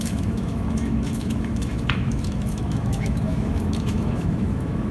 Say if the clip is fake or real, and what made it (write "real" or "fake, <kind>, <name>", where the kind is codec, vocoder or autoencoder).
fake, autoencoder, DAC-VAE